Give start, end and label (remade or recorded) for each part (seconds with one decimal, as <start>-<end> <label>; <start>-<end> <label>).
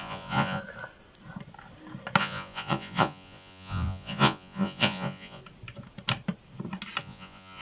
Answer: 0.0-0.6 remade; 0.6-2.2 recorded; 2.2-5.4 remade; 5.4-7.0 recorded; 7.0-7.6 remade